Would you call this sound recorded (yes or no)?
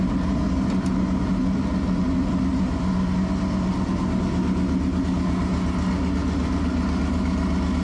yes